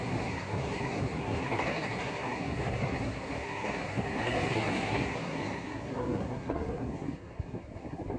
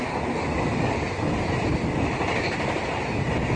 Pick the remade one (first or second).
first